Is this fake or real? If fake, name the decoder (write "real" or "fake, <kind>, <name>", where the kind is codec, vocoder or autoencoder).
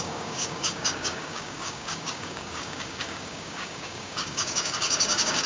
fake, codec, DAC